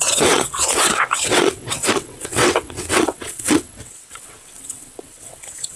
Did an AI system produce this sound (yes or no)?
yes